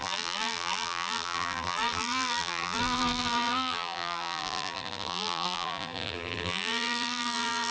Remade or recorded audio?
remade